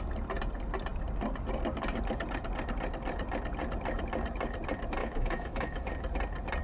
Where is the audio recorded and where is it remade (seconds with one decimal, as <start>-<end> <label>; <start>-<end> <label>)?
0.0-5.0 recorded; 5.0-5.9 remade; 5.9-6.6 recorded